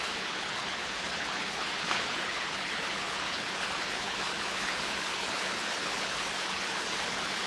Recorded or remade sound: remade